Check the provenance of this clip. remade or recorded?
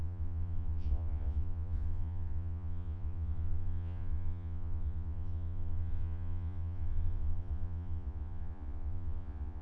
remade